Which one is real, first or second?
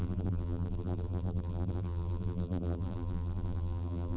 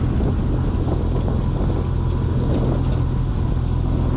second